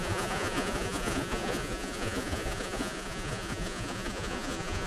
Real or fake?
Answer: fake